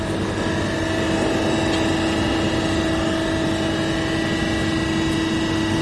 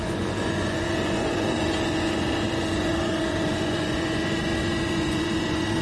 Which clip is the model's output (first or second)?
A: second